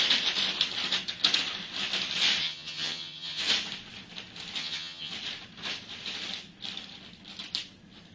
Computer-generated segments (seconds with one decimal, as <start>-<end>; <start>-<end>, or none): 2.4-3.4; 4.6-5.1